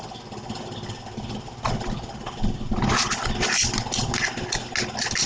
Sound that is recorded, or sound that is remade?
recorded